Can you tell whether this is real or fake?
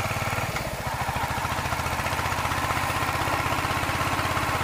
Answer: real